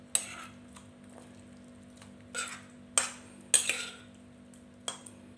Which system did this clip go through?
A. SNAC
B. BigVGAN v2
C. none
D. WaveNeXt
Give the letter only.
C